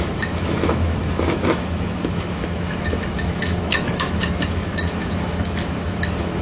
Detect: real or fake fake